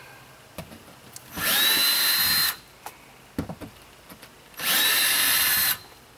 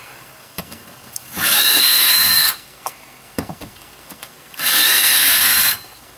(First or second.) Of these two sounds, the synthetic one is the second